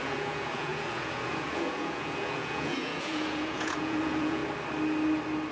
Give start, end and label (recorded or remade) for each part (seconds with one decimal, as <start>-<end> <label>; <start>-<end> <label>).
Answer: 0.0-4.4 remade; 4.4-5.5 recorded